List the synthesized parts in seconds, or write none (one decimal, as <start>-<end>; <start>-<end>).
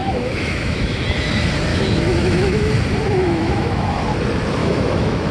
0.0-1.0; 1.7-2.7; 3.2-4.0; 4.6-5.3